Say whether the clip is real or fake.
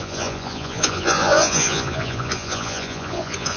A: fake